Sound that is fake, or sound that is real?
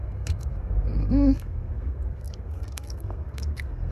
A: fake